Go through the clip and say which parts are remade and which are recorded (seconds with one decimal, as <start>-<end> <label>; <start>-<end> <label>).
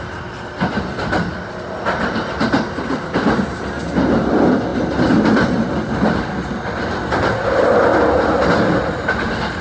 0.0-9.6 recorded